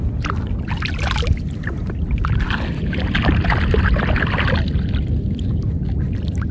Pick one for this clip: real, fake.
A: real